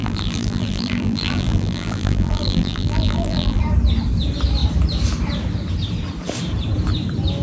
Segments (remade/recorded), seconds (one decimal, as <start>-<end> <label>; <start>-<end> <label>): 0.0-3.6 remade; 3.6-7.4 recorded